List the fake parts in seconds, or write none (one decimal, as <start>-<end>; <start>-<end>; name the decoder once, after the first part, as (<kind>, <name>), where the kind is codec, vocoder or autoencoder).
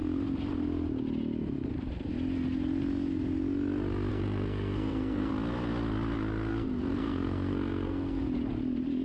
4.1-5.3 (codec, SNAC); 6.5-8.2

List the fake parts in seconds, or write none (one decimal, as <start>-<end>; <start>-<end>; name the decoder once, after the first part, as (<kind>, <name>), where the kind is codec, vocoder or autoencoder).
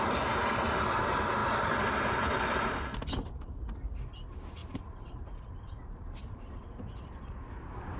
none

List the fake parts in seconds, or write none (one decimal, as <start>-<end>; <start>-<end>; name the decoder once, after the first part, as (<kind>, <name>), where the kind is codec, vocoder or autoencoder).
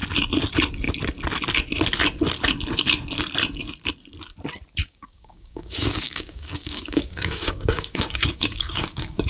4.8-9.3 (codec, DAC)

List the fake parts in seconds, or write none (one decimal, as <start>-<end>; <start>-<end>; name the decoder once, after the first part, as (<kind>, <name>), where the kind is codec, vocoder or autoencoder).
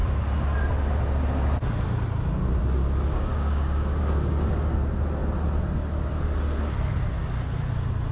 3.3-4.5 (codec, DAC)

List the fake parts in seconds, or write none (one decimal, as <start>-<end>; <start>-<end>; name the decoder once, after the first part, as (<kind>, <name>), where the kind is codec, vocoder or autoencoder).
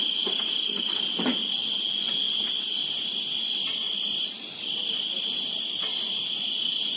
none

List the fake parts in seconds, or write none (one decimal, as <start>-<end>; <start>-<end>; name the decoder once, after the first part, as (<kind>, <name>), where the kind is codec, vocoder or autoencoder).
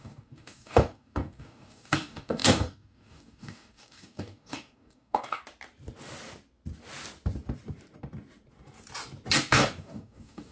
0.0-5.4 (codec, DAC); 9.5-10.5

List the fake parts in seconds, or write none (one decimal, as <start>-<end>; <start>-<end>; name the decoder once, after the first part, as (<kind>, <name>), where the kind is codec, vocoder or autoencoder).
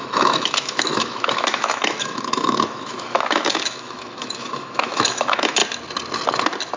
0.0-5.6 (autoencoder, DAC-VAE)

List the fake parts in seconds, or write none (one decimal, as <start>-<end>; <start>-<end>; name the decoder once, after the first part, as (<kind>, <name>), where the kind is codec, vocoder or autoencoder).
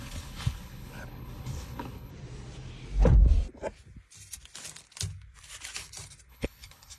0.0-2.1 (codec, HILCodec); 6.3-7.0